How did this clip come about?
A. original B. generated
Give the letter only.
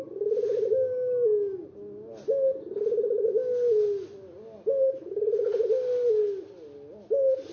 A